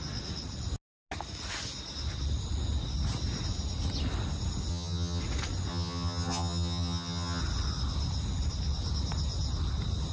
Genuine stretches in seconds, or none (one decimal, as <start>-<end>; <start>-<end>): 0.0-4.7; 5.2-5.7; 7.4-10.1